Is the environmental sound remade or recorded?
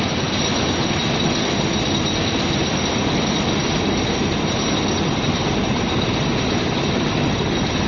recorded